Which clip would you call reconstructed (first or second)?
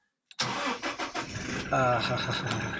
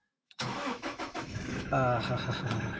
second